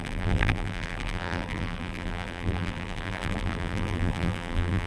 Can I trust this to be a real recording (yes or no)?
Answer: no